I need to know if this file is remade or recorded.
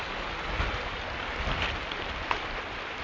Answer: recorded